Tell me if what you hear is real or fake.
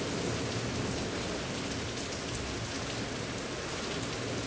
real